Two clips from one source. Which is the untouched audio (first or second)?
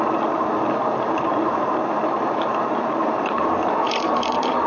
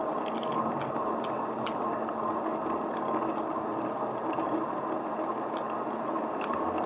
second